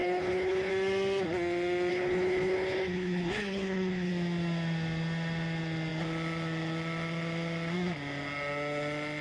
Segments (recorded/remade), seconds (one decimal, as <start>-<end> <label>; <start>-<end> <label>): 0.0-0.7 remade; 0.7-1.9 recorded; 1.9-4.1 remade; 4.1-9.2 recorded